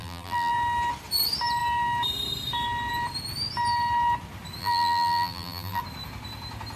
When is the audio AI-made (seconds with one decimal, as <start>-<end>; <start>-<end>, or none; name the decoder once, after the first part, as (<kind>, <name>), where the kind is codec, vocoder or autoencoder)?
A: 0.0-0.5 (vocoder, BigVGAN v2); 4.6-5.8